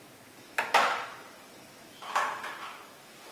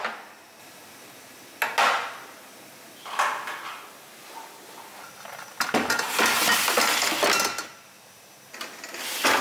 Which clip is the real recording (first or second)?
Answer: second